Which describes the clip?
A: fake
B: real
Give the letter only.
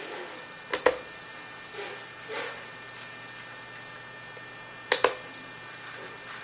B